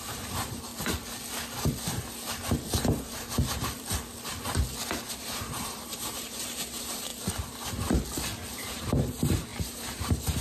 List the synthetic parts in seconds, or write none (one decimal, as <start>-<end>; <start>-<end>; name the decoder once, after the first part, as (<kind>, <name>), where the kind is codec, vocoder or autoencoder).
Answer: 0.0-0.7 (vocoder, BigVGAN v2); 5.1-7.1; 8.6-10.4